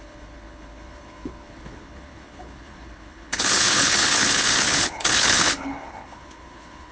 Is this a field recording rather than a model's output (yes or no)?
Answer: no